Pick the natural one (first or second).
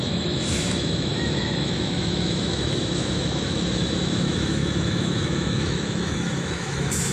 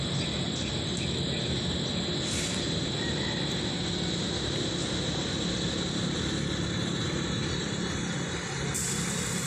second